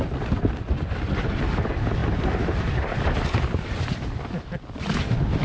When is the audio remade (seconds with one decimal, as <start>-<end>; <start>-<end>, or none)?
none